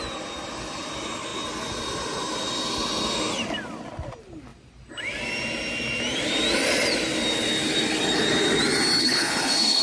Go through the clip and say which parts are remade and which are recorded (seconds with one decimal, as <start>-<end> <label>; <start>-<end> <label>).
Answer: 0.0-9.0 recorded; 9.0-9.8 remade